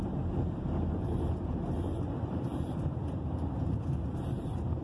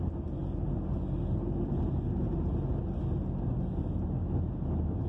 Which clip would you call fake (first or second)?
first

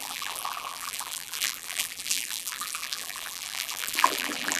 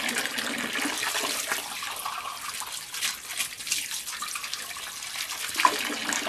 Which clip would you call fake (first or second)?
first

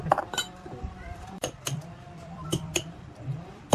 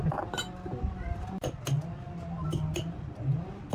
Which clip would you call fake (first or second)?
first